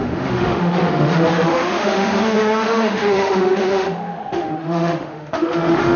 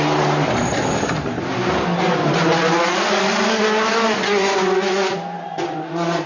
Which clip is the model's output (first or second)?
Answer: first